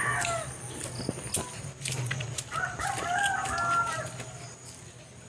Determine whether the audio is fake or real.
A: real